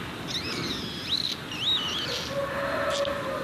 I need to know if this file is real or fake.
real